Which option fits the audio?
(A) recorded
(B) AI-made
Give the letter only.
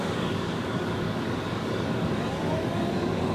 B